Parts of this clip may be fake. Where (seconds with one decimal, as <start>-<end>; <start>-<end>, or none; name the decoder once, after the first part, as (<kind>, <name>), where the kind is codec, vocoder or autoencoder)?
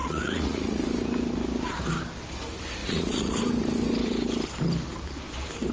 0.0-0.8 (vocoder, Vocos); 2.8-3.4